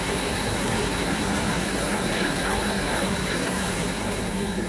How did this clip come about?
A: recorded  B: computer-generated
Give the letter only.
B